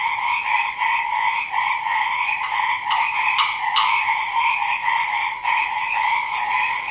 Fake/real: fake